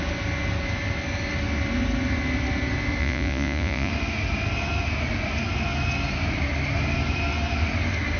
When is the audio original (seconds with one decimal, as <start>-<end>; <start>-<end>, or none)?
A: 0.0-3.0; 3.9-8.2